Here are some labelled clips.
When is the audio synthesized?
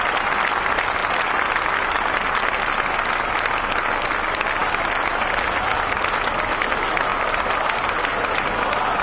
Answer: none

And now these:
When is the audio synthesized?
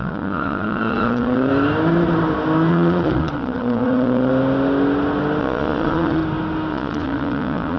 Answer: 0.0-1.5 (vocoder, Vocos); 2.7-4.3; 5.4-6.2; 6.7-7.8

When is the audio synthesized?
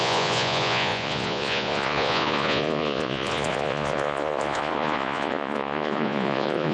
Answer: 0.0-6.7 (vocoder, Vocos)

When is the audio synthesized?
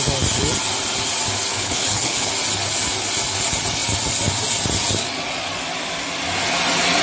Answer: 1.5-2.3 (codec, HILCodec)